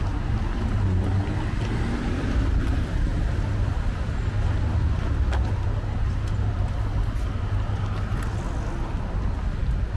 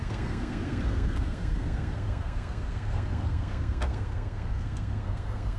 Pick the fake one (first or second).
second